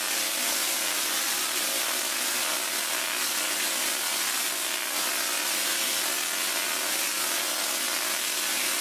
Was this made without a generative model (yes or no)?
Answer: yes